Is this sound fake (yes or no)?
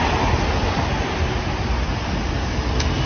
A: no